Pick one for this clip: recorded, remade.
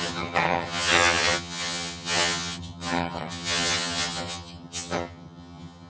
remade